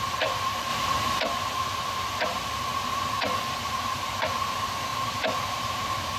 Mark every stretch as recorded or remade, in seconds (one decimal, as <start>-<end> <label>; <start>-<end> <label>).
0.0-6.2 remade